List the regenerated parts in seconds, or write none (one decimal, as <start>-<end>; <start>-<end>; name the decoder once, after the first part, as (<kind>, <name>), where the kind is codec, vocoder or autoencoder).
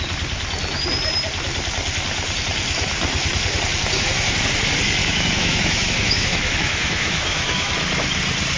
5.0-7.7 (autoencoder, DAC-VAE)